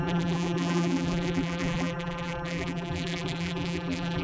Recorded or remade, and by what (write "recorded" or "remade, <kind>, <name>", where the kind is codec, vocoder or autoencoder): remade, vocoder, BigVGAN v2